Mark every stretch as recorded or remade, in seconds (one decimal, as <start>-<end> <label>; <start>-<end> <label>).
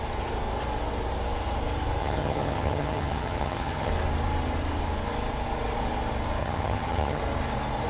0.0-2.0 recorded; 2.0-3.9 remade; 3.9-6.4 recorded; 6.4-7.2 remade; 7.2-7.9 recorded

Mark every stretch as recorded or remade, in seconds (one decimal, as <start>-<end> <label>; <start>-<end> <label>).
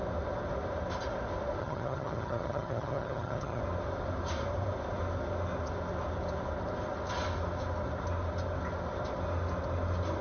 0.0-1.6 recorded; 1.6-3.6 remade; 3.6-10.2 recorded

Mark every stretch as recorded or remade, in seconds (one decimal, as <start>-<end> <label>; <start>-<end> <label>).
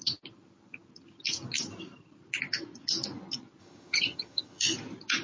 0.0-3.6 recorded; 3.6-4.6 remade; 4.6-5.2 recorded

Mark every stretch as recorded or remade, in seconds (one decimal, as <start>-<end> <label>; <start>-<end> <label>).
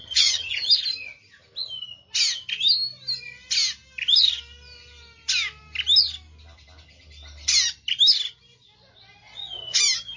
0.0-0.7 remade; 0.7-10.2 recorded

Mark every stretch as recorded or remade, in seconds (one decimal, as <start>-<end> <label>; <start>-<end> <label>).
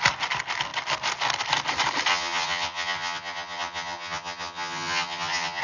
0.0-2.1 recorded; 2.1-5.6 remade